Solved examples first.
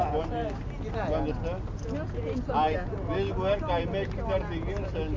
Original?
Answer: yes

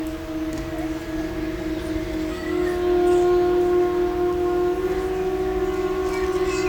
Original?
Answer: yes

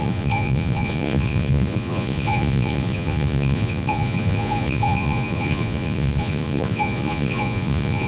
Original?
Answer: no